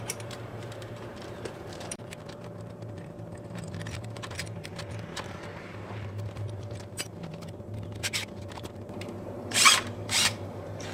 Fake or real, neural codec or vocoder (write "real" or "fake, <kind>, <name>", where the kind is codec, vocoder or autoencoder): fake, vocoder, BigVGAN v2